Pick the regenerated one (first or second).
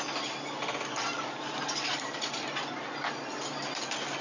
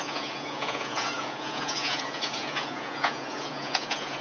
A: second